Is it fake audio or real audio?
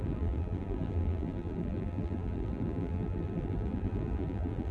fake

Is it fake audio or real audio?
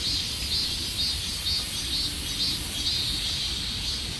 real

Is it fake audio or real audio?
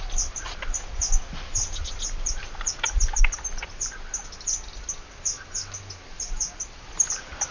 real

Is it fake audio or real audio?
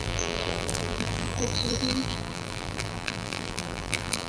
fake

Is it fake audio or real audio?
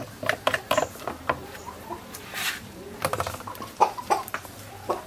fake